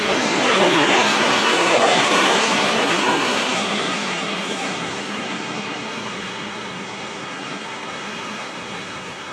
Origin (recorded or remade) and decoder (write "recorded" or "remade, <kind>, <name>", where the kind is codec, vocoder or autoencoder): remade, codec, SNAC